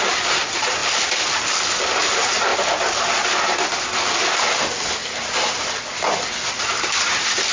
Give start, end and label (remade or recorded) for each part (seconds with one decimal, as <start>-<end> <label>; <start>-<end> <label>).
0.0-0.8 remade; 0.8-1.9 recorded; 1.9-2.5 remade; 2.5-7.0 recorded; 7.0-7.5 remade